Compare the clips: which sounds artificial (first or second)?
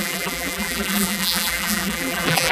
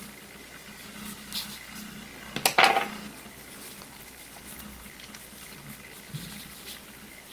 first